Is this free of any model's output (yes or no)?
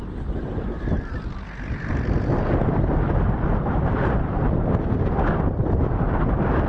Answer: yes